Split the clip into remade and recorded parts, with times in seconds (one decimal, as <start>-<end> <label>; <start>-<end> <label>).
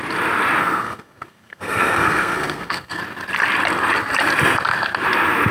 0.0-0.6 recorded; 0.6-3.0 remade; 3.0-5.5 recorded